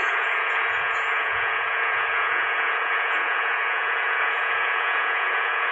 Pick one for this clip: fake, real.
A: fake